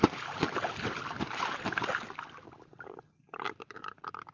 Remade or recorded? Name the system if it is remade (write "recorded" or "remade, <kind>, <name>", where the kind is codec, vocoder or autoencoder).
recorded